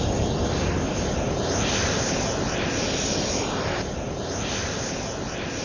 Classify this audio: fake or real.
real